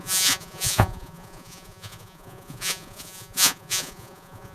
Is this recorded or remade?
remade